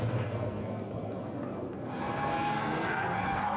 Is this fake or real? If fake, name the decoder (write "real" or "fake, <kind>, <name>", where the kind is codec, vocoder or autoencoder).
fake, codec, SNAC